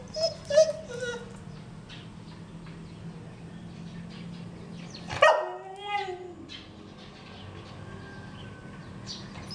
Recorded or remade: recorded